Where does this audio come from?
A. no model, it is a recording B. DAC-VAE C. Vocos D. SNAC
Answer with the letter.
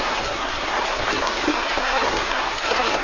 D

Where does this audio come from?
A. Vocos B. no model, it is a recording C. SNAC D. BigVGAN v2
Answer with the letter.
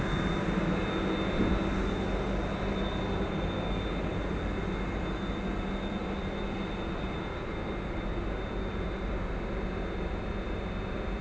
B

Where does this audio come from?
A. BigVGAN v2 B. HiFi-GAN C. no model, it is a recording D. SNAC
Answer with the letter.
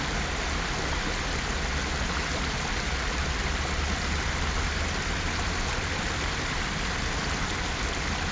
C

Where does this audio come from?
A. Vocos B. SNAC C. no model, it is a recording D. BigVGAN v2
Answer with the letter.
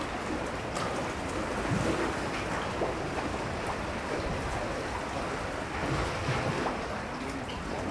C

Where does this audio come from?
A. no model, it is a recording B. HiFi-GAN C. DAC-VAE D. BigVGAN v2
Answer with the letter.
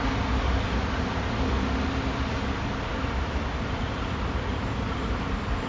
A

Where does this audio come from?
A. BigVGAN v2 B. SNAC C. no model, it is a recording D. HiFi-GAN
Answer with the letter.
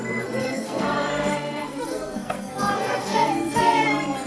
B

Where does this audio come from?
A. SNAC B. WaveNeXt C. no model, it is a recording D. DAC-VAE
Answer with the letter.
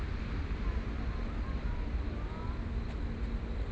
C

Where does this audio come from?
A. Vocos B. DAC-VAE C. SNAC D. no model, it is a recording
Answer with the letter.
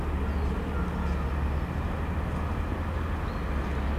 D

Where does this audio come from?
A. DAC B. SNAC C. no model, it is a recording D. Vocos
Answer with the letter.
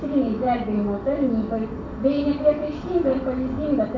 A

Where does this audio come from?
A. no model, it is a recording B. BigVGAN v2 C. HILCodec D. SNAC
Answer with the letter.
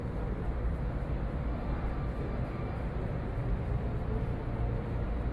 B